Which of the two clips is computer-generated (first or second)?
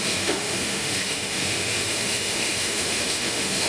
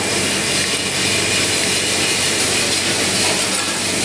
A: first